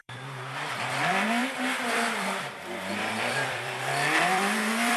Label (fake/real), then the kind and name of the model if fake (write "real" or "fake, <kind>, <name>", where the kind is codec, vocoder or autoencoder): fake, vocoder, BigVGAN v2